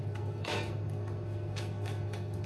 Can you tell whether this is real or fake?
fake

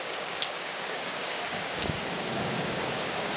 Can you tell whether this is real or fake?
fake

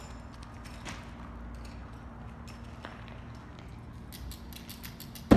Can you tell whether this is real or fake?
real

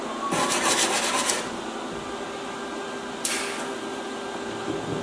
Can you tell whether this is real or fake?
real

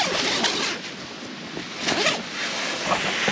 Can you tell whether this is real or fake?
real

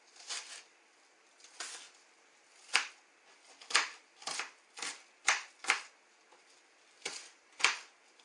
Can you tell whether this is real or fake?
real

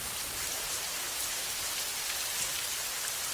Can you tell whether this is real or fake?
real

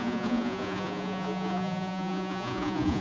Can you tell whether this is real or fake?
fake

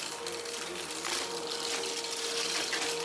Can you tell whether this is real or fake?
real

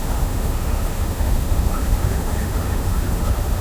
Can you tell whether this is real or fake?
fake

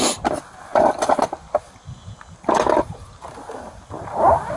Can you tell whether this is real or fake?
real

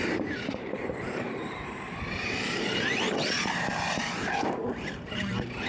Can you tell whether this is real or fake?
fake